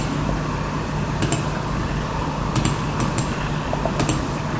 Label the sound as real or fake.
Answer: real